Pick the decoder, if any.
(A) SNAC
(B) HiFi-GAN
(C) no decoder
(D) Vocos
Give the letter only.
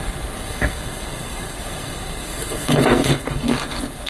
A